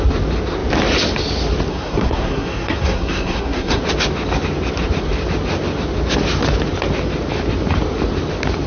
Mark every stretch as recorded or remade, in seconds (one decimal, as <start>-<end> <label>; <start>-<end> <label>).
0.0-1.7 recorded; 1.7-3.8 remade; 3.8-8.7 recorded